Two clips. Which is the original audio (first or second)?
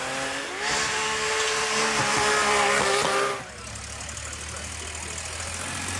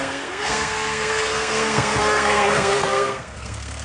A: first